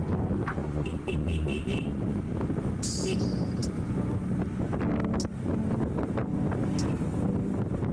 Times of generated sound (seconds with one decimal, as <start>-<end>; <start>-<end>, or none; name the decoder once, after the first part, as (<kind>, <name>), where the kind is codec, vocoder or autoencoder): 0.6-2.2 (vocoder, Vocos)